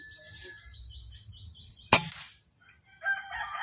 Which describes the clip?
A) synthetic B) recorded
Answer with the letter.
B